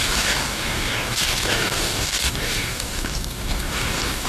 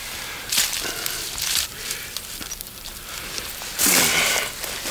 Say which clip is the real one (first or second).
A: second